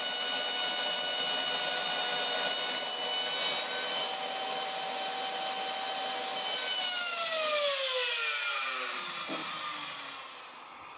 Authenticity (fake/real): real